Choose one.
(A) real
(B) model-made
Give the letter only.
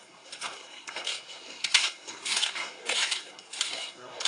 B